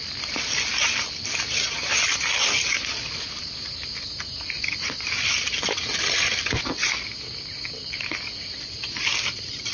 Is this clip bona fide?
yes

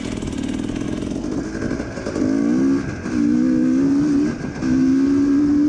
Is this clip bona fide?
yes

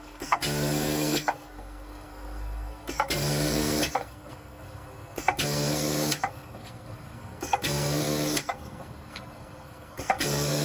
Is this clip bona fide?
no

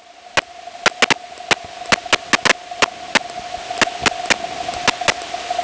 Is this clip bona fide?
yes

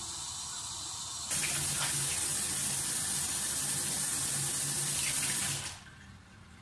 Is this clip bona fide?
yes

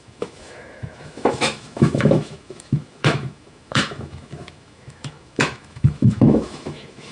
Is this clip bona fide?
no